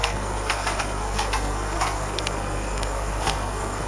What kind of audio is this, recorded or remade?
remade